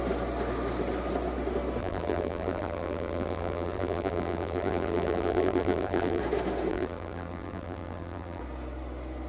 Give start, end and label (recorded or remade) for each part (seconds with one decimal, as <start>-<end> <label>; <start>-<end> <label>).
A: 0.0-1.8 recorded; 1.8-6.2 remade; 6.2-6.7 recorded; 6.7-8.4 remade; 8.4-9.3 recorded